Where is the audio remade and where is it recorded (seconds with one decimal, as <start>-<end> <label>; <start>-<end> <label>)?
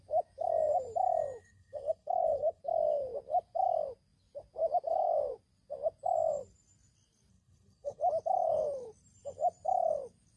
0.0-1.4 recorded; 1.4-2.6 remade; 2.6-7.3 recorded; 7.3-8.0 remade; 8.0-10.4 recorded